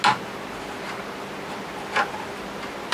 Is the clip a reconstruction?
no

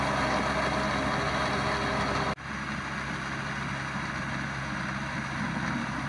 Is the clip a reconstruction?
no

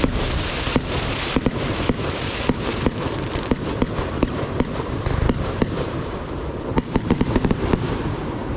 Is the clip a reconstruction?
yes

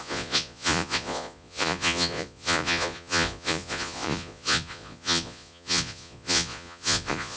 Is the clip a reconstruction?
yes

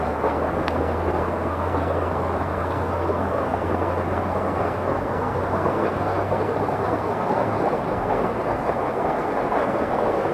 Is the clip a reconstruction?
yes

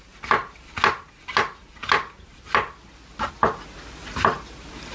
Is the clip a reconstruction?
no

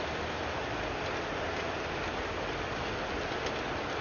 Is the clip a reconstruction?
no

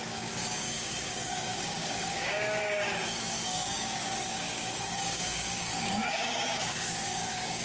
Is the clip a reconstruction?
yes